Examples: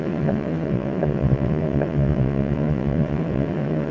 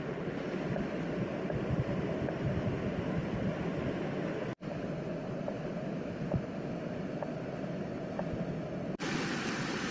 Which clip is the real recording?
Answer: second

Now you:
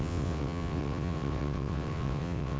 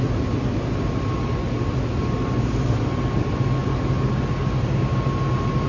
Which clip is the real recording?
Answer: second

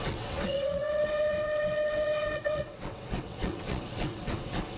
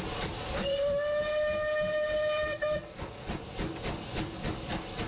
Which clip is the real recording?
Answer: second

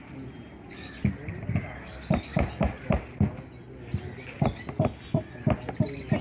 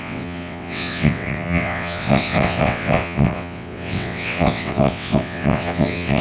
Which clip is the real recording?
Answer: first